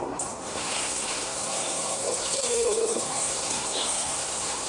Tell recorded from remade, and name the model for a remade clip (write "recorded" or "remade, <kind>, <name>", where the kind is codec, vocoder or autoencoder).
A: remade, codec, SNAC